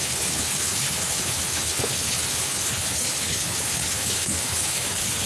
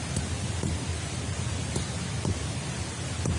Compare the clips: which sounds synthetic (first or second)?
first